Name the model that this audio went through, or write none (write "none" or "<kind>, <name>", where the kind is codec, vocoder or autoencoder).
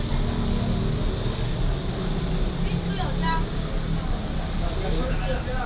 none